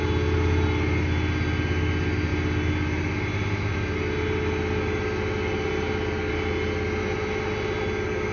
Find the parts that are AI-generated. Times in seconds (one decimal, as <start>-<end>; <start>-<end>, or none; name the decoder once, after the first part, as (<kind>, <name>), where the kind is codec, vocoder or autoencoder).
none